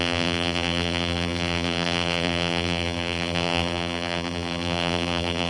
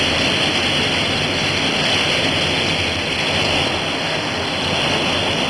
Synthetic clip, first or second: first